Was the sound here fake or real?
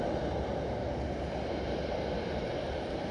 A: real